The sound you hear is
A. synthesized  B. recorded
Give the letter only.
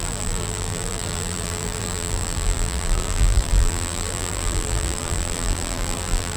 A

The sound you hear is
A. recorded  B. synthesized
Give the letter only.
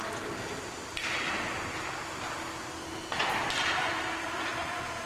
B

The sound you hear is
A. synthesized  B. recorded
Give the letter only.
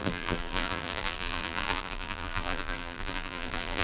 A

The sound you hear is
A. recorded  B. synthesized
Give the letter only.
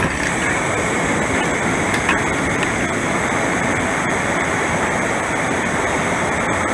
A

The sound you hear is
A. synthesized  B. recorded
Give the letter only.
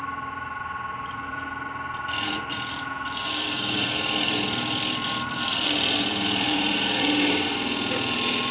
A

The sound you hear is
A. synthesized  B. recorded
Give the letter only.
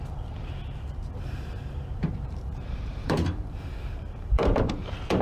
A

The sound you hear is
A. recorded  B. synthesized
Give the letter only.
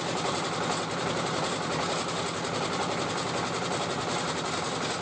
B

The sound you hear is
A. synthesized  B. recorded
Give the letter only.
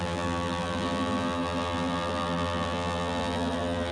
A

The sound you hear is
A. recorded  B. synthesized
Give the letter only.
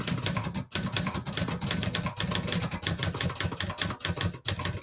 A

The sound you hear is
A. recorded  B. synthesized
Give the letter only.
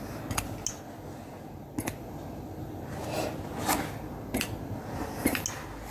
A